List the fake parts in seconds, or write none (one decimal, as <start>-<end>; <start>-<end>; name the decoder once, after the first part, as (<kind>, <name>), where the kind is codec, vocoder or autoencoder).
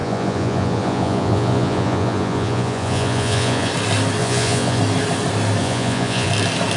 0.0-3.7 (vocoder, Vocos); 4.2-4.8; 5.6-6.3